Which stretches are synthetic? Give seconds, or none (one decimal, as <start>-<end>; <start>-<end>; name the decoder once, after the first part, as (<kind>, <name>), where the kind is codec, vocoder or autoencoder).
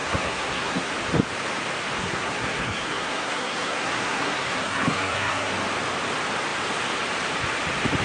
0.0-0.9 (codec, SNAC); 2.0-5.5